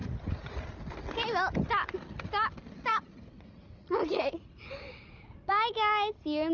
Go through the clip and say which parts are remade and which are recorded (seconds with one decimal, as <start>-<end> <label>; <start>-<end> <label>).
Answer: 0.0-0.6 remade; 0.6-2.9 recorded; 2.9-5.5 remade; 5.5-6.5 recorded